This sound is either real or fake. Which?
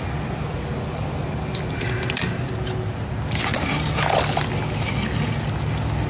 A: real